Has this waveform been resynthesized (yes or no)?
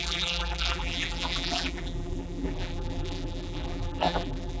yes